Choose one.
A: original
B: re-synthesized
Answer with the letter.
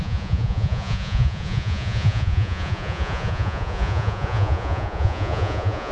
B